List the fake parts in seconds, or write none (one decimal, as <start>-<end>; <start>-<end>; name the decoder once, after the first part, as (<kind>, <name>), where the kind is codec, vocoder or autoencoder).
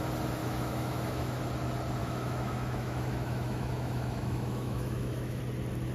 0.4-1.4 (autoencoder, DAC-VAE); 2.0-5.4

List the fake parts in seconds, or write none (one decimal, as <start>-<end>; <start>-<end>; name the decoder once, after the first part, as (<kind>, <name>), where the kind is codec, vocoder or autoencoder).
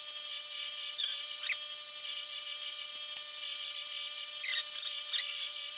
none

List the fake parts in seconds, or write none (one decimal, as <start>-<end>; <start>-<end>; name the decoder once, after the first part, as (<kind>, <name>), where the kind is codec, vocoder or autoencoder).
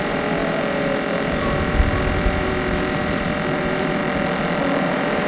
0.0-4.0 (vocoder, BigVGAN v2); 4.8-5.3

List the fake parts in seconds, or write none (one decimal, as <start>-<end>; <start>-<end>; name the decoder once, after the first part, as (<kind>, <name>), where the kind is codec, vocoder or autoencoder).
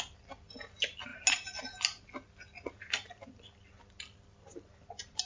none